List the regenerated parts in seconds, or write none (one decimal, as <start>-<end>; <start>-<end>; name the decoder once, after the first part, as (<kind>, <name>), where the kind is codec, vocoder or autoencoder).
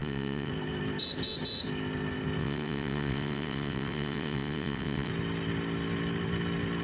0.0-0.5 (vocoder, WaveNeXt); 2.4-5.1